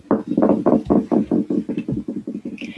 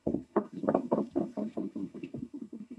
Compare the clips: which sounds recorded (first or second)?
first